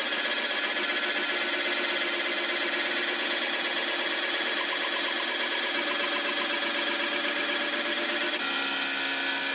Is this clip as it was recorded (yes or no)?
yes